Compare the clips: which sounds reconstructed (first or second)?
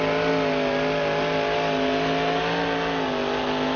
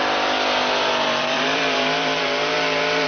second